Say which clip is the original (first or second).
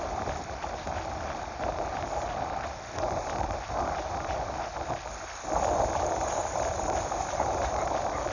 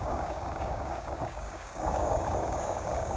first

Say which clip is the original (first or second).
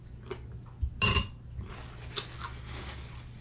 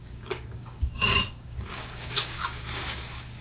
first